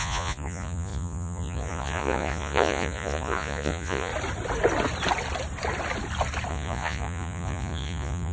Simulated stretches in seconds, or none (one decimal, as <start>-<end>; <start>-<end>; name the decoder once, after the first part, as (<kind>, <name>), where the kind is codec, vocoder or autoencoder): 0.0-4.1 (vocoder, Vocos); 6.5-8.3